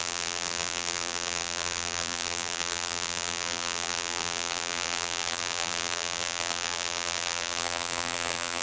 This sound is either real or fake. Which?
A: fake